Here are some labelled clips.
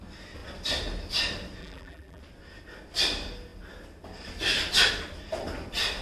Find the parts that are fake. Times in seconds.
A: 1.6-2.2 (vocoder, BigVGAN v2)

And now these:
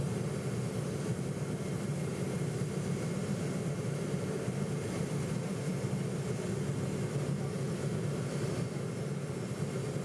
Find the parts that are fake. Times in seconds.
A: none

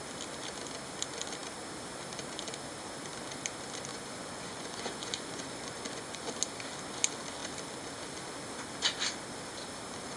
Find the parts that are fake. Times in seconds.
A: 3.9-6.3 (vocoder, Vocos)

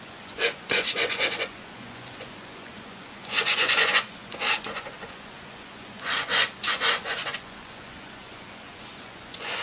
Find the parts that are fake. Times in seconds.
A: 0.0-9.6 (vocoder, Vocos)